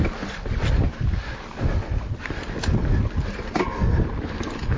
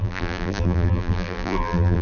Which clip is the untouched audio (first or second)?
first